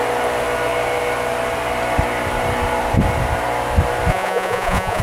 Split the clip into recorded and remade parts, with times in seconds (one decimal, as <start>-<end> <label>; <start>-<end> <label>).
0.0-4.1 recorded; 4.1-5.0 remade